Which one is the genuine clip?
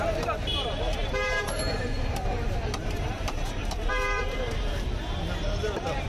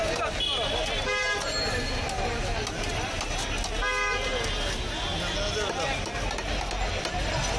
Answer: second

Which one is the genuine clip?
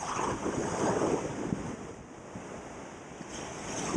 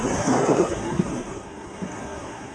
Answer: first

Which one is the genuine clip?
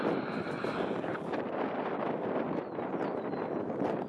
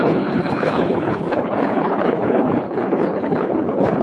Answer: first